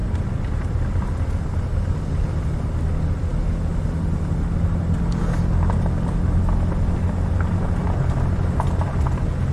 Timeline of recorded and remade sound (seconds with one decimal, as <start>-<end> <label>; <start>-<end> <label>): 0.0-9.5 recorded